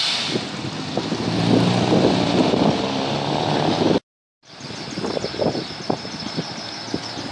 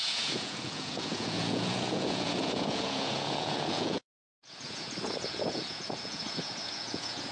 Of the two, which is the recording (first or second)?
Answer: first